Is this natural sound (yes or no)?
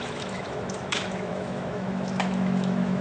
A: no